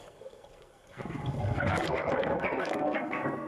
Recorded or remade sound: remade